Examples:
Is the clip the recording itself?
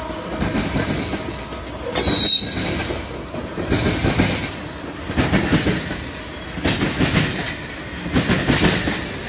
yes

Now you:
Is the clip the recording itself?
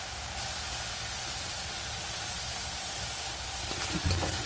yes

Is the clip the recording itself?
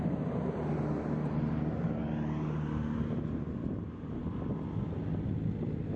yes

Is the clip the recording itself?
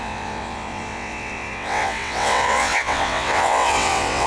no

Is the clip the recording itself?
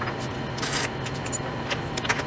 yes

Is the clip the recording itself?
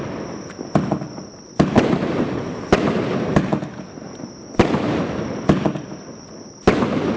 yes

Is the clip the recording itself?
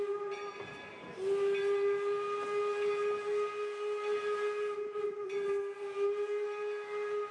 yes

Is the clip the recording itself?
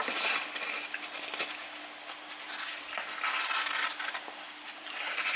yes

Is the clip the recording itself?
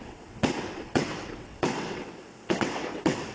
no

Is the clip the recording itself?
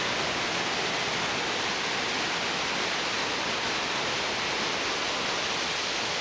yes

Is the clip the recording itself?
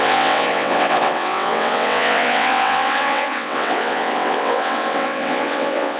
no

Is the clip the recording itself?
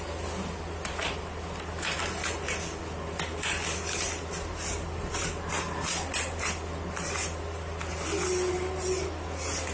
yes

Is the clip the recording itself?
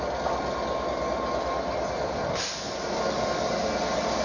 yes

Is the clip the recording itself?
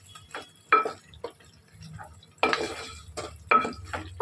yes